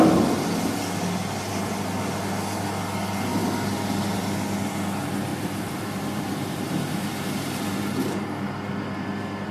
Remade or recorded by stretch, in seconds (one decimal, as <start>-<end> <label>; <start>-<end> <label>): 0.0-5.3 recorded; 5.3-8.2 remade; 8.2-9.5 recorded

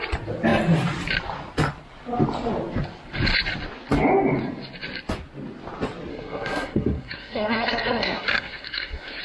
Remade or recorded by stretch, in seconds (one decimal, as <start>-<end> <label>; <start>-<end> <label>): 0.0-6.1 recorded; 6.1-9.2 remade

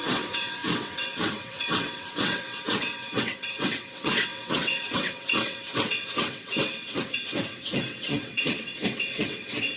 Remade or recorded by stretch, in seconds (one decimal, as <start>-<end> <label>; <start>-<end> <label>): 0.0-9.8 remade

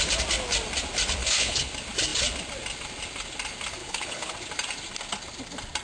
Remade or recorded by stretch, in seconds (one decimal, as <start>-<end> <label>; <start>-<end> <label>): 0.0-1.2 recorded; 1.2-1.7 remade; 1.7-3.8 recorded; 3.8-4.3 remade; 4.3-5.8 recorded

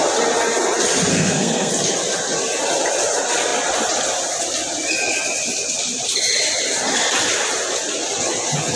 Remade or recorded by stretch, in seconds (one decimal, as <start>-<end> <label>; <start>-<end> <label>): 0.0-1.1 recorded; 1.1-1.7 remade; 1.7-8.8 recorded

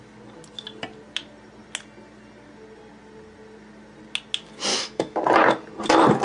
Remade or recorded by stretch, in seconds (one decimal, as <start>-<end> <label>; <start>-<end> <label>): 0.0-4.7 recorded; 4.7-5.2 remade; 5.2-6.2 recorded